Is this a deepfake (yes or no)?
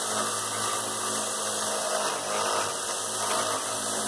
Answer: no